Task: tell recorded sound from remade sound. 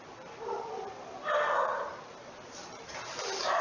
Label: remade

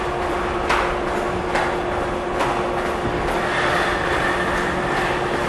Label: recorded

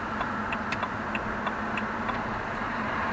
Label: recorded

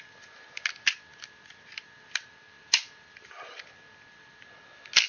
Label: recorded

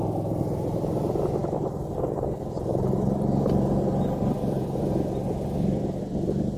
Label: remade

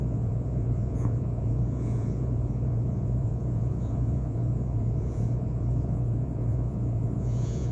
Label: remade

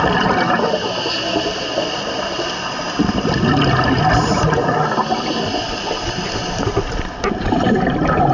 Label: recorded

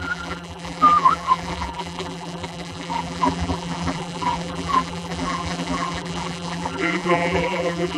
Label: remade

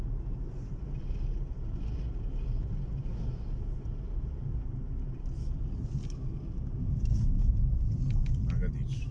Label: recorded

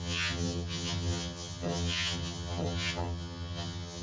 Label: remade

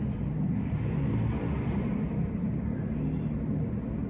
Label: recorded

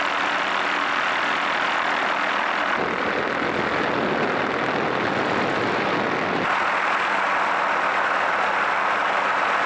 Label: recorded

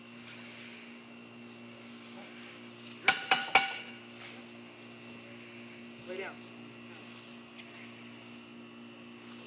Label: recorded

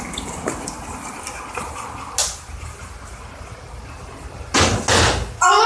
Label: recorded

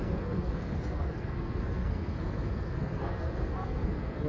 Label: remade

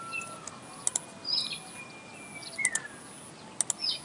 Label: recorded